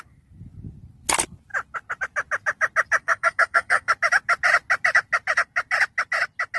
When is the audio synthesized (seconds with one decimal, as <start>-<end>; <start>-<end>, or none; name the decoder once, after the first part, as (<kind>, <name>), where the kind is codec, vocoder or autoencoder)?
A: 3.0-3.9 (codec, SNAC)